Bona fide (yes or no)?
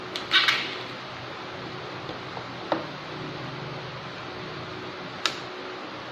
yes